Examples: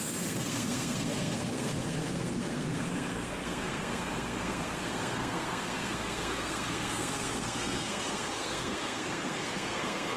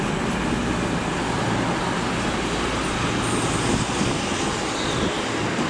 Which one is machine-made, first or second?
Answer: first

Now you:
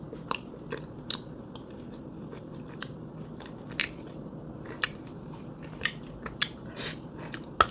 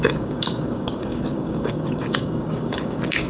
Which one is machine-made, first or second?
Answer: second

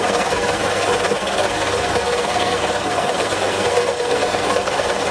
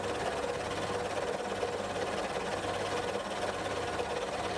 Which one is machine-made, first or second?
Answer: first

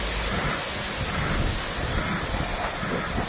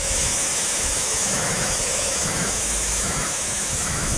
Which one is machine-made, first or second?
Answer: second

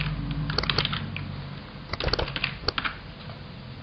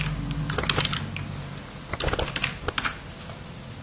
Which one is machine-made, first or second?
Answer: second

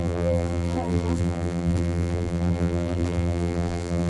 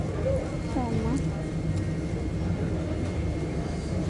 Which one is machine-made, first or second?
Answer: first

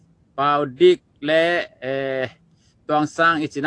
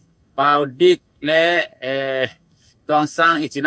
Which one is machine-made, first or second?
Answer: second